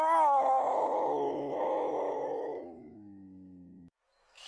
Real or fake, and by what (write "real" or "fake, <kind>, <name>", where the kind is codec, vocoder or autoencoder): fake, autoencoder, DAC-VAE